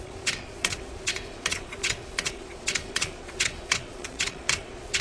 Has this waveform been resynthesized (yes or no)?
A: yes